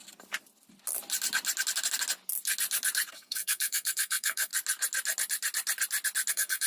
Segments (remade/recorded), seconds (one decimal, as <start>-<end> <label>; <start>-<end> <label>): 0.0-3.1 recorded; 3.1-4.5 remade; 4.5-6.3 recorded; 6.3-6.7 remade